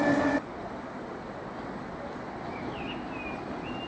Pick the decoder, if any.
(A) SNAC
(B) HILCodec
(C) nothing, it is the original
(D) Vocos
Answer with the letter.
C